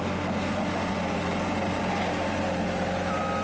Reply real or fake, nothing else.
real